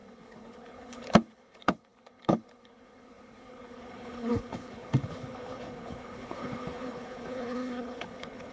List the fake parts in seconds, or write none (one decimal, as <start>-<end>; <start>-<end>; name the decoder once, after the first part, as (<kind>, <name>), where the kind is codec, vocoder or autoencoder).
0.0-8.5 (codec, HILCodec)